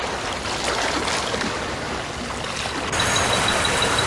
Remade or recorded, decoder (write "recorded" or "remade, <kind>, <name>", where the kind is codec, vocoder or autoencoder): recorded